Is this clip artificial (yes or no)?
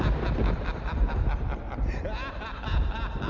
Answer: no